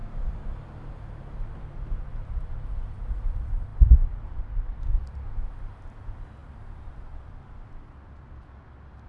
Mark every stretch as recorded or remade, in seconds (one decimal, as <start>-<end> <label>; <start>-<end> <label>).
0.0-6.4 recorded; 6.4-8.5 remade; 8.5-9.1 recorded

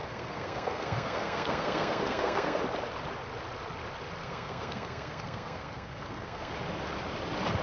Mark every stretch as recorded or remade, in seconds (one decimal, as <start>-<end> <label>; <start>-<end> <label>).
0.0-2.6 remade; 2.6-4.2 recorded; 4.2-6.5 remade; 6.5-7.6 recorded

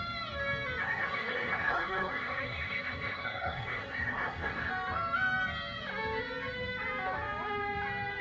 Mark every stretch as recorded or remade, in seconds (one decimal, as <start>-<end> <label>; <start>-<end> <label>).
0.0-0.8 recorded; 0.8-4.7 remade; 4.7-8.2 recorded

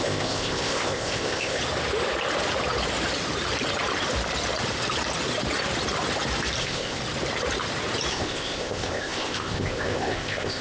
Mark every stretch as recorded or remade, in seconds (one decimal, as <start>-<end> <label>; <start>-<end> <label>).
0.0-1.6 remade; 1.6-6.6 recorded; 6.6-7.0 remade; 7.0-8.1 recorded; 8.1-10.6 remade

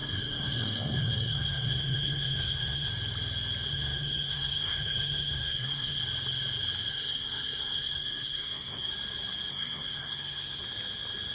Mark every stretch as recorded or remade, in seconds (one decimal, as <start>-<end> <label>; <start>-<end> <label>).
0.0-2.9 remade; 2.9-3.7 recorded; 3.7-6.0 remade; 6.0-6.9 recorded; 6.9-8.9 remade; 8.9-9.5 recorded; 9.5-10.6 remade; 10.6-11.3 recorded

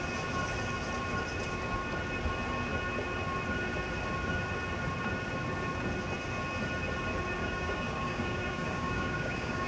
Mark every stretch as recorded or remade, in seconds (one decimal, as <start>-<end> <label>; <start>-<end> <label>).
0.0-7.4 recorded; 7.4-9.7 remade

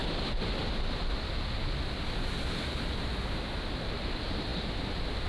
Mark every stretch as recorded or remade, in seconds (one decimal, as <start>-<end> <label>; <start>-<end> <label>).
0.0-5.3 recorded

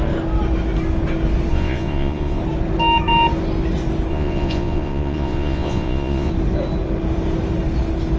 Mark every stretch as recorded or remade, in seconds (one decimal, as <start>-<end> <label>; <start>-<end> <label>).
0.0-1.5 recorded; 1.5-2.4 remade; 2.4-4.1 recorded; 4.1-6.3 remade; 6.3-8.2 recorded